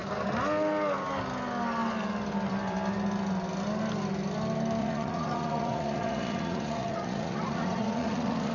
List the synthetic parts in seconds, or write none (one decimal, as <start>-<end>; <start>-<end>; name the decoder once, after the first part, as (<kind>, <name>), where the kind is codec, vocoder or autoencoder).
4.8-8.5 (vocoder, Vocos)